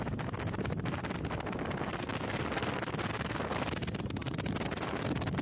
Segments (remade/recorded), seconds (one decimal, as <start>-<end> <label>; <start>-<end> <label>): 0.0-5.4 recorded